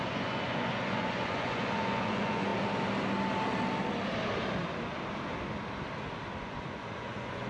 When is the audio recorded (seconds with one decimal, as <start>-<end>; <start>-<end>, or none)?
2.5-6.4